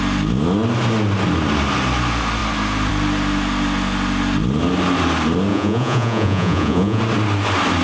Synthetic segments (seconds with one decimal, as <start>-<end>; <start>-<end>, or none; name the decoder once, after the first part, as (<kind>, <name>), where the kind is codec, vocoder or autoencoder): 5.5-7.0 (vocoder, Vocos)